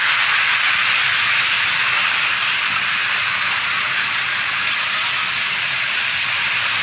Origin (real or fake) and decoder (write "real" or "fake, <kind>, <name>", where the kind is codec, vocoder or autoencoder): fake, vocoder, BigVGAN v2